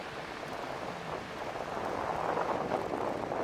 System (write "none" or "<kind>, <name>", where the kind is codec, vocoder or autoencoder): none